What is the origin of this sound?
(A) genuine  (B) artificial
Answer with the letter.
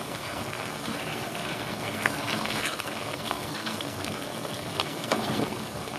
B